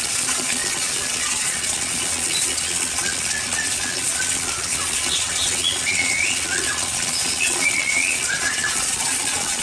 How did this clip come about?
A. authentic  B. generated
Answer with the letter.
B